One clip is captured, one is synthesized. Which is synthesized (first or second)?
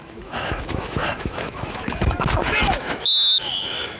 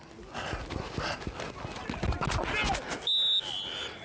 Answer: first